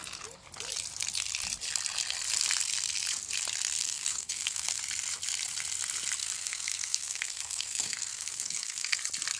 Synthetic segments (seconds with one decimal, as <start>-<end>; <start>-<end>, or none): 3.8-4.8; 6.2-9.0